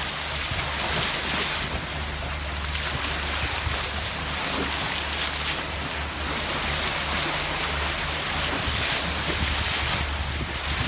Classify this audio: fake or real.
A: real